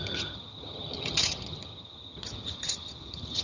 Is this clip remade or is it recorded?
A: remade